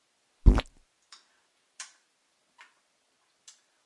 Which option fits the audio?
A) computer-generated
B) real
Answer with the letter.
B